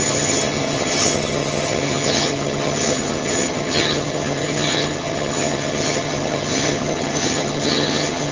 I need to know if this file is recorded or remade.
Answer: remade